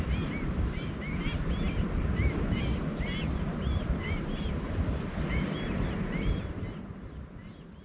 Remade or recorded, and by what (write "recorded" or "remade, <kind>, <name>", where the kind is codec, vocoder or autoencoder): recorded